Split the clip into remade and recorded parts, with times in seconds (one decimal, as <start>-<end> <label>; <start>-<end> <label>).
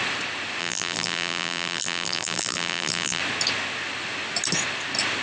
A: 0.0-0.6 recorded; 0.6-3.2 remade; 3.2-5.2 recorded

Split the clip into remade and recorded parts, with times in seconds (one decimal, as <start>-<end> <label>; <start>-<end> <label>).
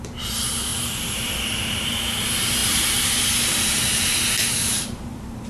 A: 0.0-5.5 remade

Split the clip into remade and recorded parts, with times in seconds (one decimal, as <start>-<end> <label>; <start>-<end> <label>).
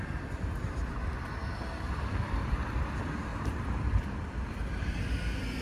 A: 0.0-3.3 recorded; 3.3-5.6 remade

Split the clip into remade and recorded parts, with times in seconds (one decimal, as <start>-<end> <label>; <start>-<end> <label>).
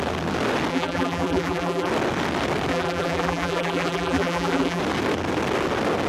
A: 0.0-0.7 recorded; 0.7-1.9 remade; 1.9-2.7 recorded; 2.7-4.8 remade; 4.8-6.1 recorded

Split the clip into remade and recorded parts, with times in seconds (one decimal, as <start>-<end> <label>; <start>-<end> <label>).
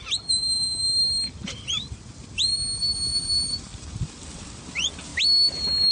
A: 0.0-3.1 recorded; 3.1-4.6 remade; 4.6-5.9 recorded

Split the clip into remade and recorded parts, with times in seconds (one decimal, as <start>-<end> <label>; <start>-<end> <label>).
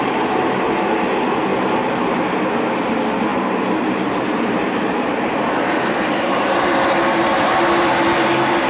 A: 0.0-1.5 recorded; 1.5-2.2 remade; 2.2-3.3 recorded; 3.3-6.9 remade; 6.9-8.7 recorded